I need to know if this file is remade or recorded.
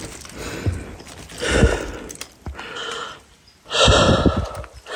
recorded